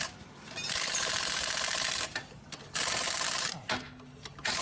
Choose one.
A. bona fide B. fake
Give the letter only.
A